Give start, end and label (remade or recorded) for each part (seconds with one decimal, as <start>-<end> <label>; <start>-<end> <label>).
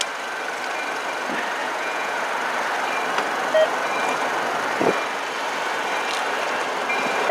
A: 0.0-1.6 recorded; 1.6-2.2 remade; 2.2-7.3 recorded